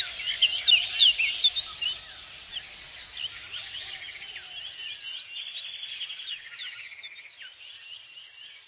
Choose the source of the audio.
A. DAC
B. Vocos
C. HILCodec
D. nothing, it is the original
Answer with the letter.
D